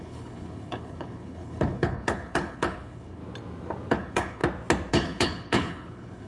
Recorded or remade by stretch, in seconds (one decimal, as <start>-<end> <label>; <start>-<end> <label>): 0.0-3.2 remade; 3.2-3.9 recorded; 3.9-4.4 remade; 4.4-4.9 recorded; 4.9-6.3 remade